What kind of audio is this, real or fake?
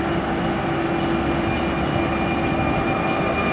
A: real